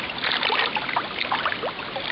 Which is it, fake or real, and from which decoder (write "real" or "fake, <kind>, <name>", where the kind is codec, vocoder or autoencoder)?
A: real